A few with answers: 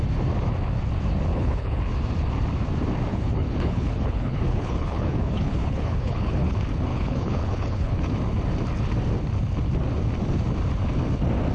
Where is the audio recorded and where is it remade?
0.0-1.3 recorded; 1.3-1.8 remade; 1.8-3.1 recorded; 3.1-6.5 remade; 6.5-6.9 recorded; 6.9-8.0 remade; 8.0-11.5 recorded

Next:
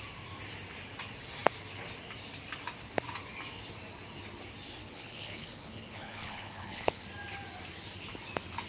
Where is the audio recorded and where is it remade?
0.0-4.8 recorded; 4.8-7.0 remade; 7.0-8.7 recorded